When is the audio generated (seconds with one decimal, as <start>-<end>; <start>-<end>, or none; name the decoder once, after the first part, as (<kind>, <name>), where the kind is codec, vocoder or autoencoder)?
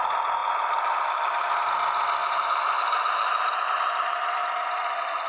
2.2-3.7 (vocoder, BigVGAN v2)